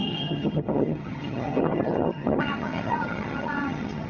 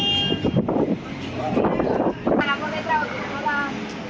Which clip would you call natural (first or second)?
second